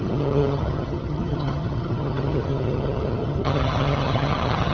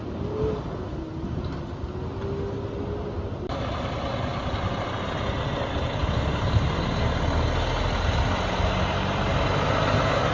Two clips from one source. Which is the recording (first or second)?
second